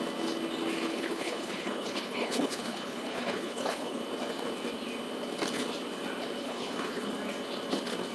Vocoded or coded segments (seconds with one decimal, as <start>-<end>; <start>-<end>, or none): 0.9-4.0; 6.4-7.1